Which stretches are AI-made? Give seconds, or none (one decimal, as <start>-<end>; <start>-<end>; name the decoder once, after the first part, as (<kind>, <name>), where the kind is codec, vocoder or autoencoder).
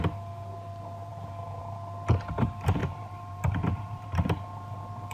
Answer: 2.8-4.4 (vocoder, BigVGAN v2)